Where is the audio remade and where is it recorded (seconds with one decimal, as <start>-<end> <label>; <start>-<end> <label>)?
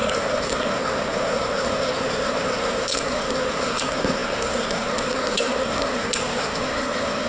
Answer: 0.0-7.3 remade